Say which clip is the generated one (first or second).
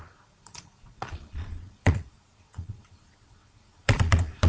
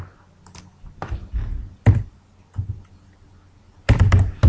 first